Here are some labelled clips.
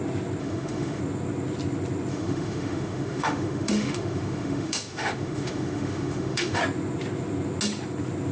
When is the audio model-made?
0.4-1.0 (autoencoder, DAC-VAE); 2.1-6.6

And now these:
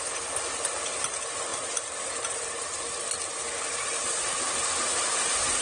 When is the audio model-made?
none

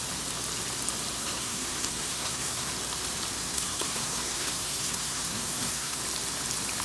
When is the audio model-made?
1.2-2.7 (codec, SNAC); 3.4-6.0

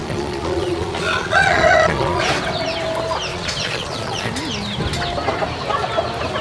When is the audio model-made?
0.0-2.2 (vocoder, Vocos); 3.3-4.3

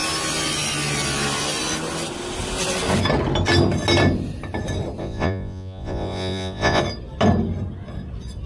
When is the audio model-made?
5.0-6.8 (vocoder, Vocos)

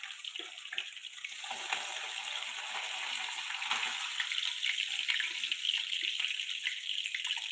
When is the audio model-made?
none